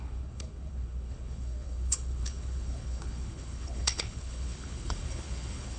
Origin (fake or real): fake